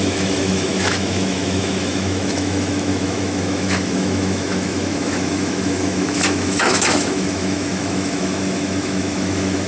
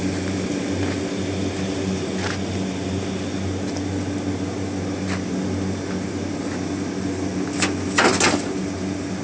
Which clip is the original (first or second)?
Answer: second